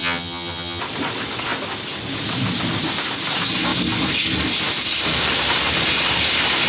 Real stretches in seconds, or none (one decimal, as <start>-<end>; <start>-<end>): 0.8-6.7